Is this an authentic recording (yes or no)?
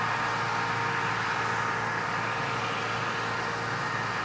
yes